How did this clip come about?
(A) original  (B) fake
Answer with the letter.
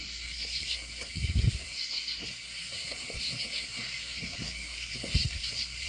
B